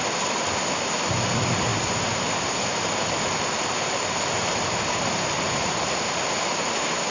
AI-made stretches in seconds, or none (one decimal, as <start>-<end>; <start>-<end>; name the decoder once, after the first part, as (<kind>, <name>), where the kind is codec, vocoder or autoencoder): none